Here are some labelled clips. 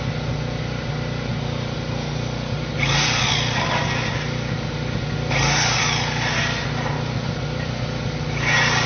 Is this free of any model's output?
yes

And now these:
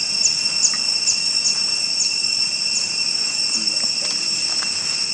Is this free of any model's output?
yes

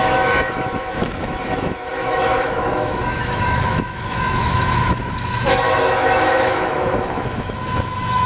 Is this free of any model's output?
no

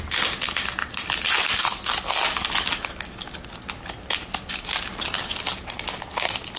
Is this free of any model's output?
yes